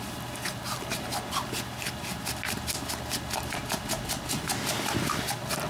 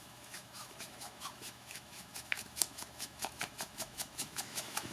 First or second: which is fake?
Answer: second